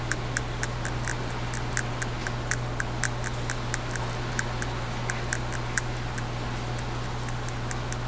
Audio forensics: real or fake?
real